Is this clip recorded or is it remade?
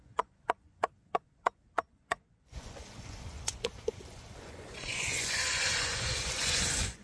remade